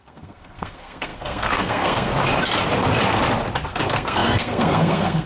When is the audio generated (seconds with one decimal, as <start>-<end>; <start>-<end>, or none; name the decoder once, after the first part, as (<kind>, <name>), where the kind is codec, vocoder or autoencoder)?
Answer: 0.0-2.1 (codec, SNAC); 3.7-5.3